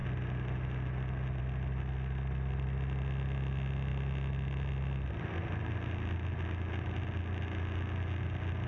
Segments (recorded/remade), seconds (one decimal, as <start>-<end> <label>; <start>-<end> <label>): 0.0-8.7 recorded